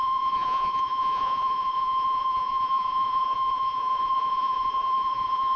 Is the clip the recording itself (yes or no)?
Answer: no